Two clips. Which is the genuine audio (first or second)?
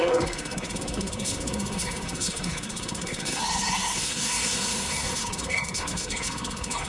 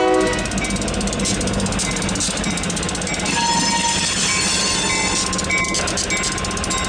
second